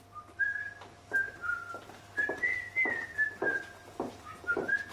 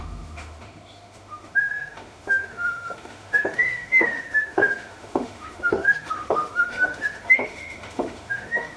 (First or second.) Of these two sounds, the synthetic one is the second